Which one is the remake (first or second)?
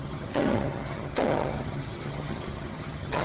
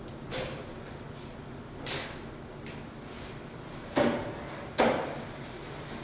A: first